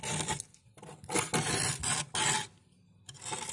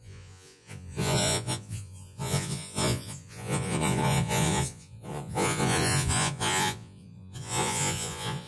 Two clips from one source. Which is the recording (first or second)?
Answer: first